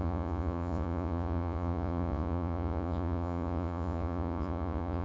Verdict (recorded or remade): remade